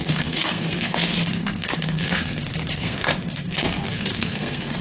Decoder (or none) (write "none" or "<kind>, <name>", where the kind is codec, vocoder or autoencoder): codec, SNAC